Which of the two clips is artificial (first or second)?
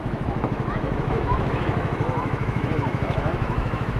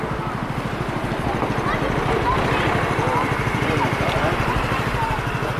first